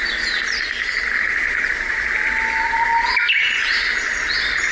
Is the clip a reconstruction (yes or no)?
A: no